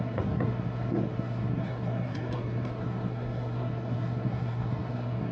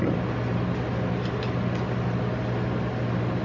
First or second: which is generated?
first